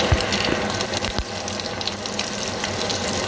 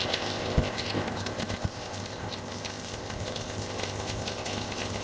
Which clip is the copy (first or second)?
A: second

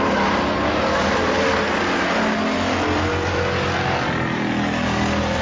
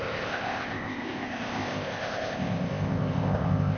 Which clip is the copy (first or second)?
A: second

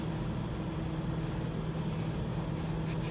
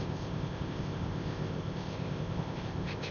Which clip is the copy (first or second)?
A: second